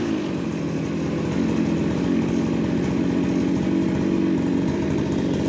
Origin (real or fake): real